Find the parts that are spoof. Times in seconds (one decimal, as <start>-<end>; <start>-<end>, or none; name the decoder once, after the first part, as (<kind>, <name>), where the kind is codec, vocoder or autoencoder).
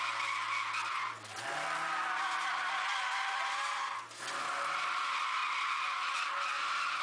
none